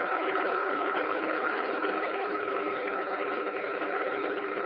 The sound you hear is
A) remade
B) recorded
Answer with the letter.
A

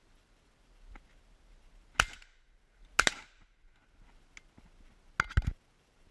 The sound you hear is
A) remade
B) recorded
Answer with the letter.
B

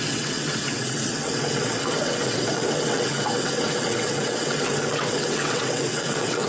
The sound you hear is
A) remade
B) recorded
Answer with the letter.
A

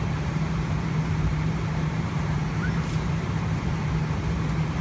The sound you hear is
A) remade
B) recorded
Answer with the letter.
A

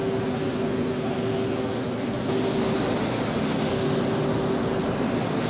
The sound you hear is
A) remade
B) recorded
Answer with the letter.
B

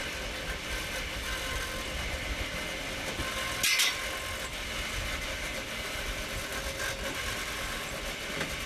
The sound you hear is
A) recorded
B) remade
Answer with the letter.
A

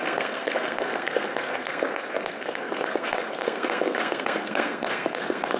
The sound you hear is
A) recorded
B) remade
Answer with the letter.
B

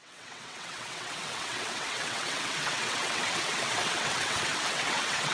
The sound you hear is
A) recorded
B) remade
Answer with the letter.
B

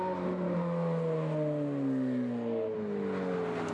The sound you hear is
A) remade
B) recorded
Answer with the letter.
B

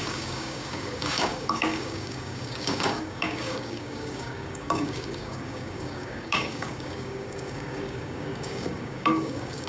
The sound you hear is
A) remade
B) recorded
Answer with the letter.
A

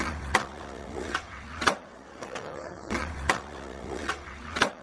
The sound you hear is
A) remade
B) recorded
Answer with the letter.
A